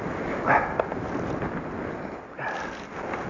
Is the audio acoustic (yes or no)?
yes